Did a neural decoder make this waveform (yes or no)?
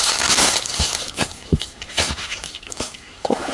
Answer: yes